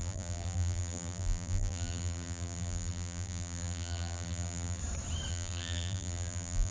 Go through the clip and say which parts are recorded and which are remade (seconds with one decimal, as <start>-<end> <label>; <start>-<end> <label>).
0.0-4.8 remade; 4.8-5.3 recorded; 5.3-6.7 remade